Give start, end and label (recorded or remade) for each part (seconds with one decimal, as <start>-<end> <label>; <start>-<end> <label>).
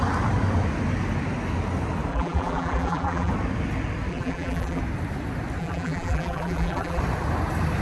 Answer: 0.0-2.1 recorded; 2.1-3.3 remade; 3.3-4.1 recorded; 4.1-4.8 remade; 4.8-5.6 recorded; 5.6-7.0 remade; 7.0-7.8 recorded